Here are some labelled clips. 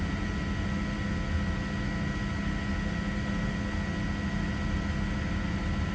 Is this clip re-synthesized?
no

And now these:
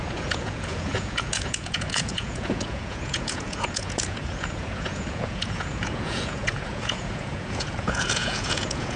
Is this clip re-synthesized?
yes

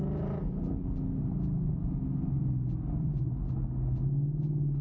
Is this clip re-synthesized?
no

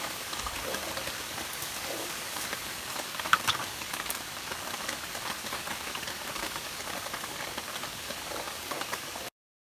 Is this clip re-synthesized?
yes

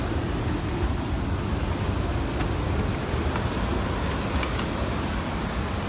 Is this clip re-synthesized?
no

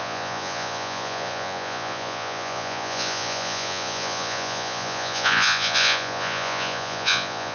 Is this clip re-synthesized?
yes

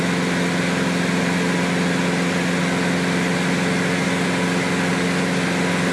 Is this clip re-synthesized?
no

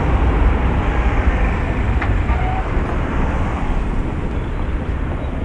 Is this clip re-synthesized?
yes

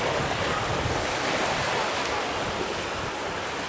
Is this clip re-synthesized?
no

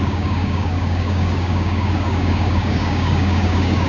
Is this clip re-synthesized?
yes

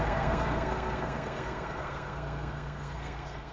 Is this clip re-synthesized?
yes